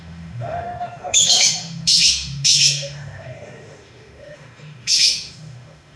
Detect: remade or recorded remade